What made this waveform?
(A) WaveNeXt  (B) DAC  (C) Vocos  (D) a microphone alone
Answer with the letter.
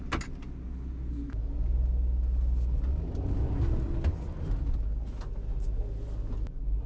D